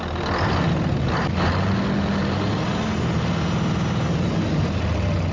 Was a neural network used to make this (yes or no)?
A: no